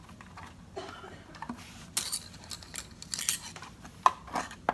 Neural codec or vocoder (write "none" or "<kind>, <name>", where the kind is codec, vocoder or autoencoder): none